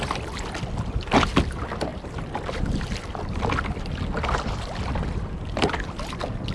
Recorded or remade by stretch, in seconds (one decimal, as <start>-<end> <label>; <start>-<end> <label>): 0.0-6.5 recorded